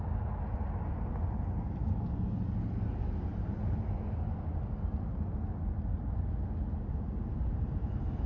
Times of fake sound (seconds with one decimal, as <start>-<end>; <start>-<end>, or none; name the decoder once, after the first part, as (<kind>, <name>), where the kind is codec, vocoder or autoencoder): none